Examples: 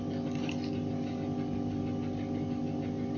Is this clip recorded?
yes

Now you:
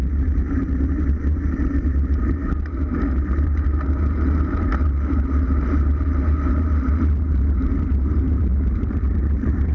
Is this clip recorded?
no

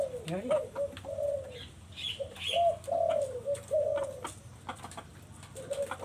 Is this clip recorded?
yes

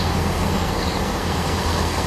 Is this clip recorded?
no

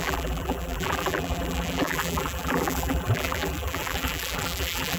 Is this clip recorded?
no